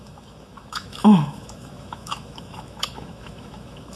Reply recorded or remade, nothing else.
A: remade